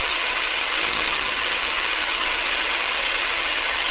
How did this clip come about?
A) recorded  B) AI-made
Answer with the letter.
B